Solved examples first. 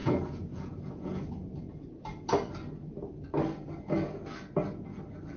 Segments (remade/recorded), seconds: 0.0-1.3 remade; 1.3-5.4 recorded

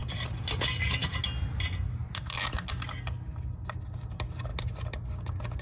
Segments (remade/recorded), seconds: 0.0-5.6 recorded

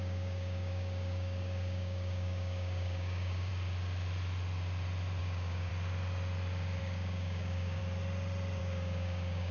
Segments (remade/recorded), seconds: 0.0-3.5 remade; 3.5-5.2 recorded; 5.2-5.7 remade; 5.7-6.8 recorded; 6.8-7.8 remade; 7.8-8.6 recorded; 8.6-9.5 remade

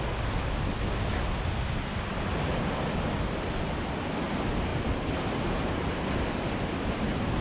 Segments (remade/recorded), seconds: 0.0-7.4 recorded

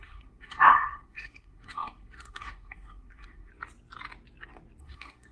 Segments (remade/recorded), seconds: 0.0-3.5 remade; 3.5-4.8 recorded; 4.8-5.3 remade

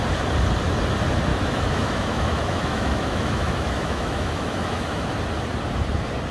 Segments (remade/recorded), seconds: 0.0-1.3 recorded; 1.3-5.1 remade; 5.1-6.3 recorded

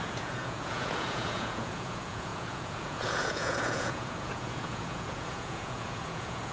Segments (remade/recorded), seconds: 0.0-6.5 remade

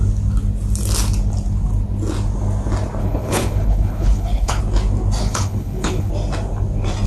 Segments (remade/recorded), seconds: 0.0-3.0 recorded; 3.0-4.6 remade; 4.6-5.2 recorded; 5.2-6.1 remade; 6.1-7.1 recorded